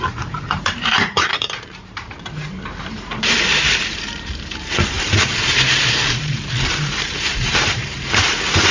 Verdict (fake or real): fake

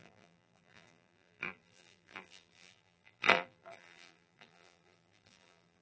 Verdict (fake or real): fake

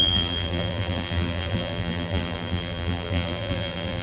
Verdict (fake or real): fake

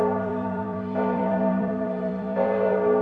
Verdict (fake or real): fake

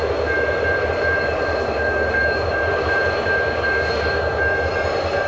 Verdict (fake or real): fake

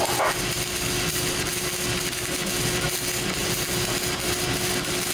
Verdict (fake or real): real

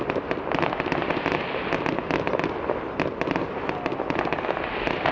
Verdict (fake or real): real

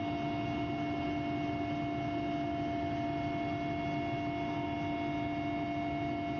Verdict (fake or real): real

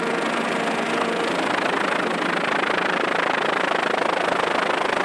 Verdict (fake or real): real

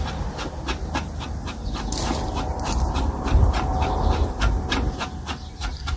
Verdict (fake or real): real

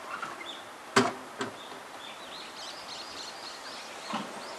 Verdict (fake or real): real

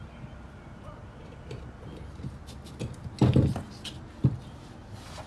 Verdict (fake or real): real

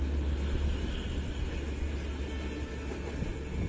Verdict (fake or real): real